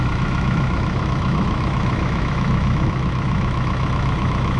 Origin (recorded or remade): remade